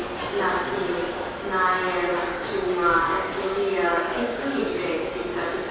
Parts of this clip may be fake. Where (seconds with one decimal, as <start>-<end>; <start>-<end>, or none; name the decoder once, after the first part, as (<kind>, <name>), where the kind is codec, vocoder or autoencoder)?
2.1-5.1 (codec, DAC)